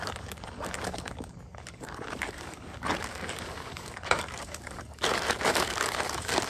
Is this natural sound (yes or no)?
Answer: no